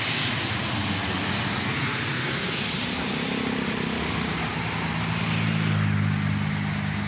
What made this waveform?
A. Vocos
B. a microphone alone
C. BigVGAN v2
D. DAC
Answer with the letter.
B